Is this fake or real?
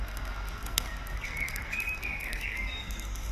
fake